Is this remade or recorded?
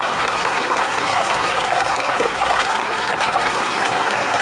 remade